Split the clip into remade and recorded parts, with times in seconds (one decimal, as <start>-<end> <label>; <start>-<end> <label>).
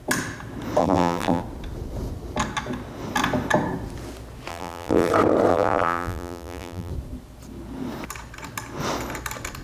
0.0-0.8 recorded; 0.8-1.4 remade; 1.4-4.5 recorded; 4.5-5.1 remade; 5.1-5.5 recorded; 5.5-6.9 remade; 6.9-9.6 recorded